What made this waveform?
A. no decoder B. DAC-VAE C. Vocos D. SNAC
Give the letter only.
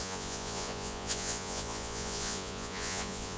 C